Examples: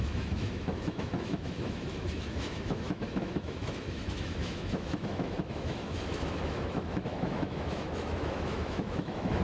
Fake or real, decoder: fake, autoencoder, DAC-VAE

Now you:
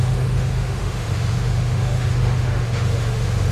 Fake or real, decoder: fake, autoencoder, DAC-VAE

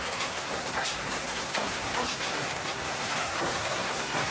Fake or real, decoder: fake, codec, SNAC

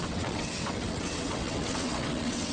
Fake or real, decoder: fake, vocoder, WaveNeXt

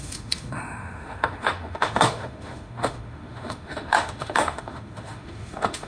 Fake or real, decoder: fake, autoencoder, DAC-VAE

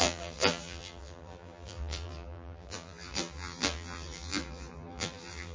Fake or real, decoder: fake, vocoder, BigVGAN v2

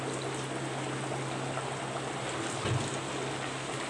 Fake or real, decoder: real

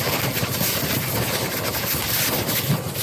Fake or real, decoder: real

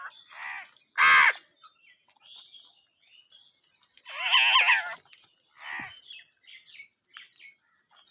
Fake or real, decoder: real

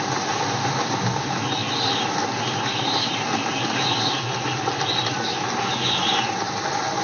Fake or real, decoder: real